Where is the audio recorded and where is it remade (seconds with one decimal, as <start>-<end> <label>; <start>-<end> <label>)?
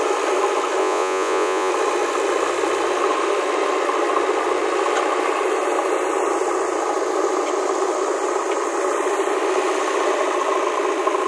0.0-0.8 recorded; 0.8-1.7 remade; 1.7-11.3 recorded